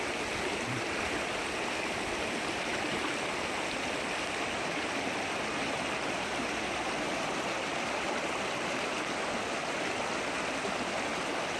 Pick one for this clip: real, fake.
real